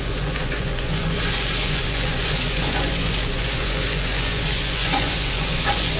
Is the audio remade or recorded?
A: remade